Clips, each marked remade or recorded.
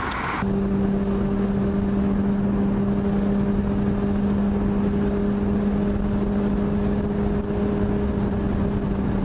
recorded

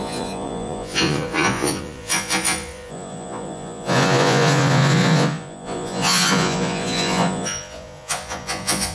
remade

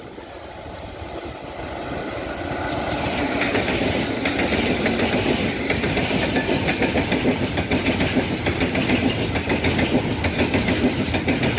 recorded